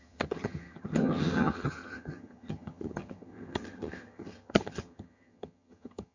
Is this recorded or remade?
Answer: remade